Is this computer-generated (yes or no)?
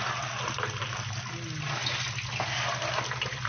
no